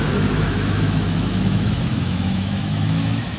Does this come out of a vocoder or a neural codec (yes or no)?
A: yes